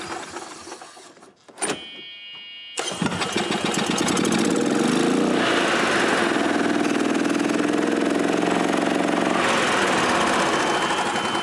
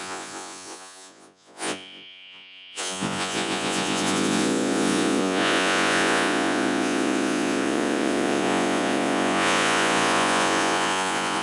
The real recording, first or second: first